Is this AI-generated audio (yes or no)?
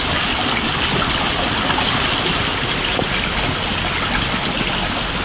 no